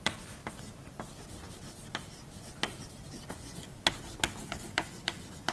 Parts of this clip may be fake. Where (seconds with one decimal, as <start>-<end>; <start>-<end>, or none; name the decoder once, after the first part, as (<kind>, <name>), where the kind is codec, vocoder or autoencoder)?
0.0-0.4 (vocoder, Vocos); 3.3-3.7; 4.5-5.5